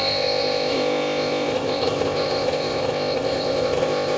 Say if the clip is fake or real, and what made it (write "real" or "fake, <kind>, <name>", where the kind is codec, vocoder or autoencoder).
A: fake, codec, ZipCodec